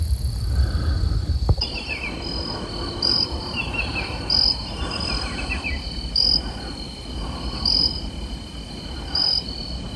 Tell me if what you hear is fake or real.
real